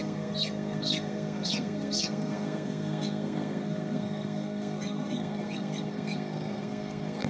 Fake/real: fake